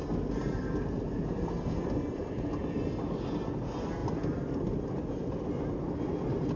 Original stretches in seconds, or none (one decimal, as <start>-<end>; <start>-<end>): 0.0-6.6